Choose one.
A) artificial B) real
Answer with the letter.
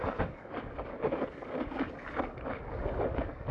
A